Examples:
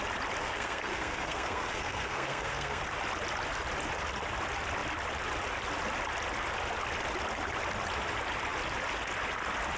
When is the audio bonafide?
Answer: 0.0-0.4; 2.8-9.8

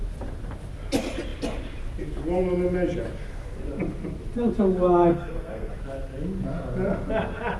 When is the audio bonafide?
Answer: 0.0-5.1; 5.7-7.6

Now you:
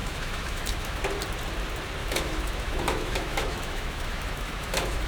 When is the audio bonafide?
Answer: 1.0-2.0

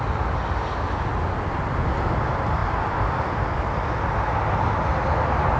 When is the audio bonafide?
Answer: 0.0-5.6

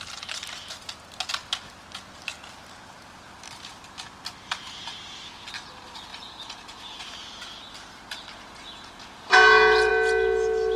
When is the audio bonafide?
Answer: 0.0-6.1; 7.7-8.3; 9.9-10.8

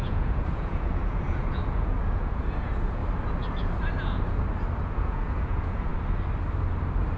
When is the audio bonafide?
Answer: 3.0-4.8; 5.9-7.2

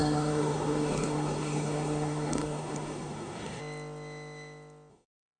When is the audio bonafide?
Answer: 3.6-4.9